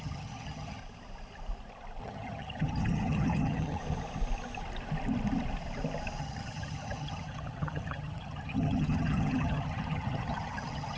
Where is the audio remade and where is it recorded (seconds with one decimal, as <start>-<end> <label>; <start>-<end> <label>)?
0.0-0.8 remade; 0.8-2.0 recorded; 2.0-3.8 remade; 3.8-6.2 recorded; 6.2-11.0 remade